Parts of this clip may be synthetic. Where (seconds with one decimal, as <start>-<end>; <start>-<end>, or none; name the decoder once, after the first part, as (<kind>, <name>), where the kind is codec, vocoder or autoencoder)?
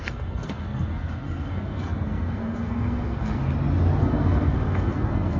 0.0-3.4 (codec, SNAC); 4.0-5.4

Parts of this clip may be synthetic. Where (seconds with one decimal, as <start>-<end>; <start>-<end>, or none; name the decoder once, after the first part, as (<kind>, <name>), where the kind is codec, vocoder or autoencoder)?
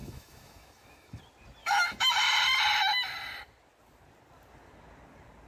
0.0-1.2 (autoencoder, DAC-VAE); 1.6-2.1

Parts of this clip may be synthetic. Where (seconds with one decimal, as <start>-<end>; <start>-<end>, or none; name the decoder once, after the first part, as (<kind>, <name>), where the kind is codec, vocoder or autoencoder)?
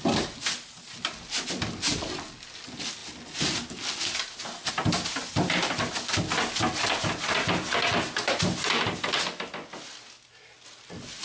none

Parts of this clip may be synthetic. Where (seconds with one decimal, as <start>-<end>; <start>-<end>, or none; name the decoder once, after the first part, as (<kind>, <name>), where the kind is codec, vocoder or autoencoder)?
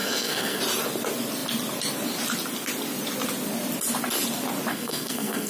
0.0-0.6 (codec, SNAC); 4.7-5.5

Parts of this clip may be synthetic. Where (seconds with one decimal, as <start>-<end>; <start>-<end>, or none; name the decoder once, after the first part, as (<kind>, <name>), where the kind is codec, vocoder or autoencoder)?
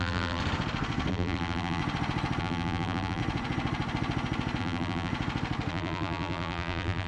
0.0-0.4 (vocoder, BigVGAN v2); 1.1-1.8; 2.4-3.2; 4.6-5.1; 5.7-7.1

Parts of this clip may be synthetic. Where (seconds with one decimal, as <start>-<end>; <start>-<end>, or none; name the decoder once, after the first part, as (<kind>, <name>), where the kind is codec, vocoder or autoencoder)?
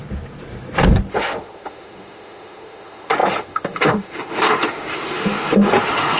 1.1-6.2 (autoencoder, DAC-VAE)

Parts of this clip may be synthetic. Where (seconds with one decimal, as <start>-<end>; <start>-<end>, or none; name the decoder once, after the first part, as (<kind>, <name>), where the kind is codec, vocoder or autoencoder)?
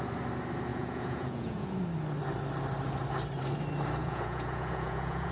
0.7-1.8 (vocoder, Vocos); 4.0-5.3